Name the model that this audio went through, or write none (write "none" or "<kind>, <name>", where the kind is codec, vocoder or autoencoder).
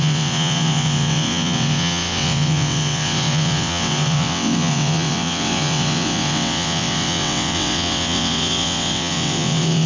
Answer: vocoder, WaveNeXt